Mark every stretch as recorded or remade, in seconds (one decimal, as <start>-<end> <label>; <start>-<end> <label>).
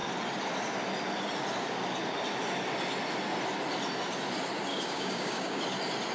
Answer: 0.0-4.7 recorded; 4.7-5.6 remade; 5.6-6.1 recorded